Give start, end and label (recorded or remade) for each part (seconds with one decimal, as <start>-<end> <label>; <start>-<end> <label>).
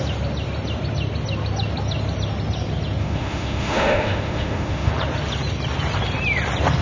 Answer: 0.0-3.0 recorded; 3.0-4.9 remade; 4.9-6.8 recorded